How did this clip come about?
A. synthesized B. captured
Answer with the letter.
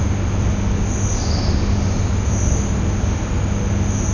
B